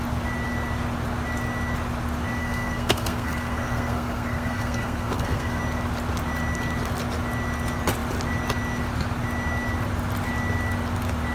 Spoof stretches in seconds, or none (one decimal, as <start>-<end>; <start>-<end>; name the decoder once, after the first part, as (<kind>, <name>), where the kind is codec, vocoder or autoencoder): 2.4-5.6 (codec, SNAC)